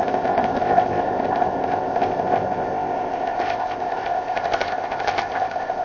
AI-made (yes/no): yes